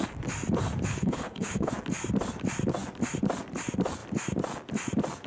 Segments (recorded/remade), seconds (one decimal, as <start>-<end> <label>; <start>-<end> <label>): 0.0-0.9 recorded; 0.9-1.7 remade; 1.7-5.3 recorded